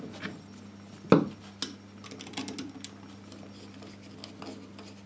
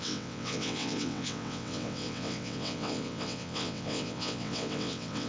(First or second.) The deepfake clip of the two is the second